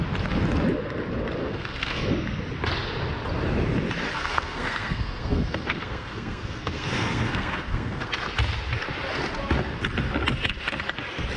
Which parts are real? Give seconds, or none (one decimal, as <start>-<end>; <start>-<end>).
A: 0.0-1.4; 2.1-4.1; 8.1-11.4

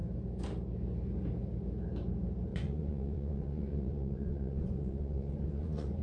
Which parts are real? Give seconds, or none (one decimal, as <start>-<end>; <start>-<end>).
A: 0.0-2.5

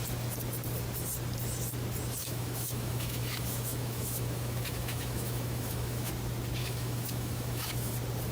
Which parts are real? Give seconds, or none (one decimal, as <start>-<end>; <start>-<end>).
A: 0.0-2.2; 6.1-6.6; 7.9-8.3

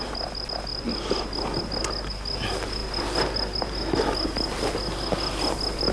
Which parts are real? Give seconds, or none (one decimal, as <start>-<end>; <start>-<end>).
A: 0.0-5.9

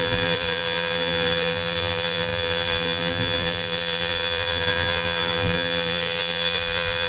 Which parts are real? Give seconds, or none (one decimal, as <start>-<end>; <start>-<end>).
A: none

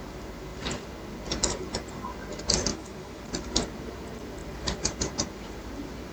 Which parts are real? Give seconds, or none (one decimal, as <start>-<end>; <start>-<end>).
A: 0.0-2.7; 3.2-6.1

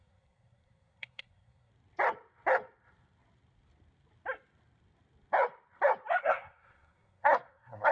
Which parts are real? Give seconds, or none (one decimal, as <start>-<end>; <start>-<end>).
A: 1.7-6.2